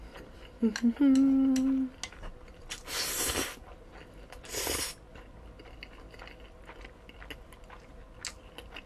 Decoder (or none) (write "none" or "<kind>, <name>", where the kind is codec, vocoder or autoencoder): none